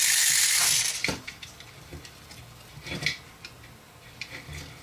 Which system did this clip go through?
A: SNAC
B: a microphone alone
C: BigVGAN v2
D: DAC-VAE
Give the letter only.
B